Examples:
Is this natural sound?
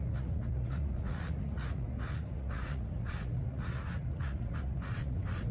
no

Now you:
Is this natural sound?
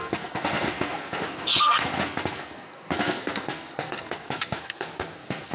no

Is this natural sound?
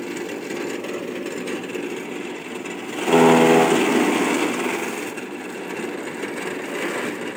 yes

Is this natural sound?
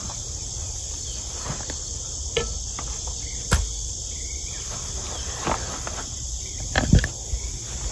yes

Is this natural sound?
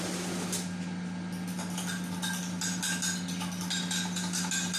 yes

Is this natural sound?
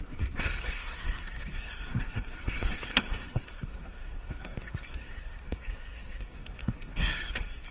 no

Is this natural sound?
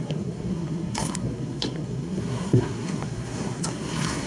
no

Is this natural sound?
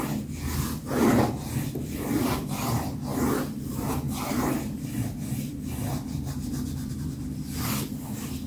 yes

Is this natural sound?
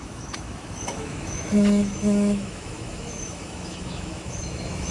no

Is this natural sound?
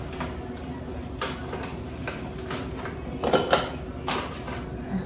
yes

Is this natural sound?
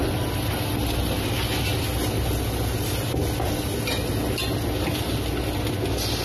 yes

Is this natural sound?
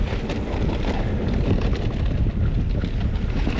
yes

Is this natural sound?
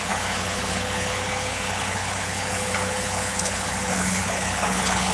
no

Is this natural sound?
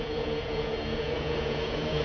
no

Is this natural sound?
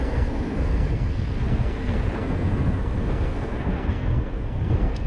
no